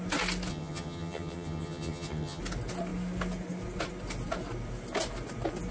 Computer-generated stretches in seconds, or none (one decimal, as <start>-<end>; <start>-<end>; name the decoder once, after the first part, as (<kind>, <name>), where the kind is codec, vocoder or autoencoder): 0.5-2.4 (vocoder, HiFi-GAN)